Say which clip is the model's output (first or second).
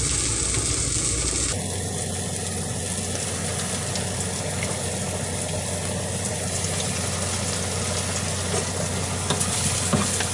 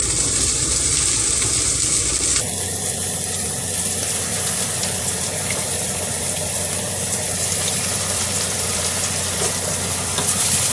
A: second